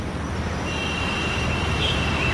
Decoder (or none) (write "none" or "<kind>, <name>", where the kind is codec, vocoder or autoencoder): none